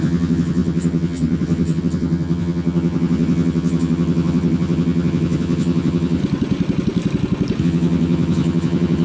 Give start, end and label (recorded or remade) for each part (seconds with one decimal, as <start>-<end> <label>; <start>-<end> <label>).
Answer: 0.0-6.2 remade; 6.2-7.6 recorded; 7.6-9.0 remade